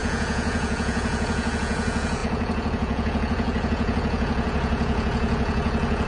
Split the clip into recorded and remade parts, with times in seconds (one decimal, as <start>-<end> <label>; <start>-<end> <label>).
0.0-6.1 remade